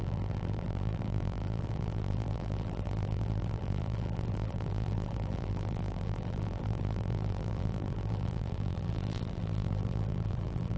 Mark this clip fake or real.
fake